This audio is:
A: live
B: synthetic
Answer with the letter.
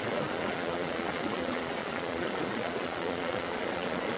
B